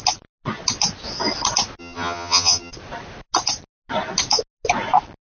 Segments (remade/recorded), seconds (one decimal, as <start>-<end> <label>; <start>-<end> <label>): 0.0-1.8 recorded; 1.8-2.7 remade; 2.7-5.3 recorded